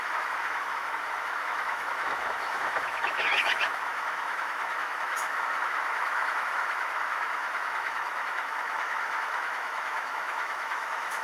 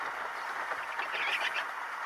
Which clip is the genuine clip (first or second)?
second